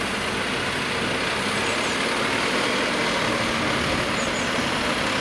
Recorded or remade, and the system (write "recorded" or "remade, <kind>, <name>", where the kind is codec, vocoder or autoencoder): recorded